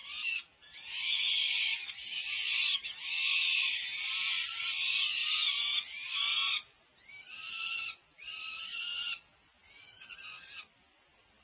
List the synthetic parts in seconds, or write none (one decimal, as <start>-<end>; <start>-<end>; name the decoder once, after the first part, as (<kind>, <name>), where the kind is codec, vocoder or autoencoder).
0.0-0.8 (vocoder, Vocos)